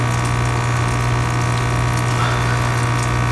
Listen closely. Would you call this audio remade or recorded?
recorded